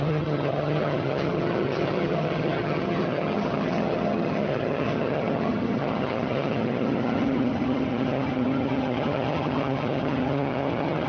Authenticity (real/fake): fake